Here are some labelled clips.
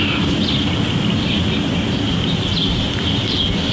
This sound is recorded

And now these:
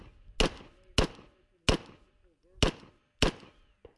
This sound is recorded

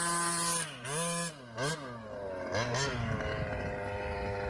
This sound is recorded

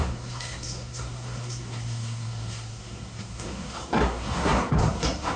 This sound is remade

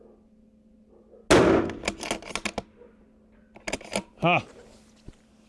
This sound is recorded